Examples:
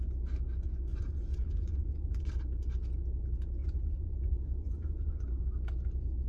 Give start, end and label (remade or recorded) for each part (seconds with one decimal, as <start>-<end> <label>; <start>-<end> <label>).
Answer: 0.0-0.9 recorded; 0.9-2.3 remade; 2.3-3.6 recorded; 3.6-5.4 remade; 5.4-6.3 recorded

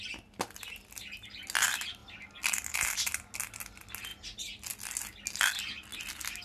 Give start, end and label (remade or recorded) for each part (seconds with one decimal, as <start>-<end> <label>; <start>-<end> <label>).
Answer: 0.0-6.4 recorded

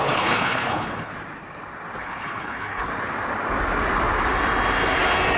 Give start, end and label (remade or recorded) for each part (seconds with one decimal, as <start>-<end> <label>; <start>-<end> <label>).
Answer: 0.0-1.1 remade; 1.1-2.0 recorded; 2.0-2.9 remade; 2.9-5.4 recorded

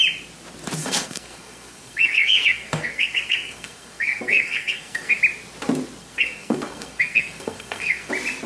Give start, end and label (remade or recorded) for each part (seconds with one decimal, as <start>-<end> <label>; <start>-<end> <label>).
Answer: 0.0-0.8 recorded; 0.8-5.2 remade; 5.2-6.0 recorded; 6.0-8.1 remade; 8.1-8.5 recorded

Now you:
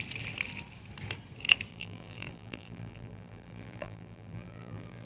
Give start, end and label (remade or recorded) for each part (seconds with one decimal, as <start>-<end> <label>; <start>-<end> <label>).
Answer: 0.0-1.7 recorded; 1.7-5.1 remade

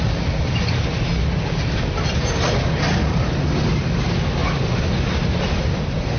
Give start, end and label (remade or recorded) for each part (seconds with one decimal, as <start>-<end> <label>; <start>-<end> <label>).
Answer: 0.0-6.2 recorded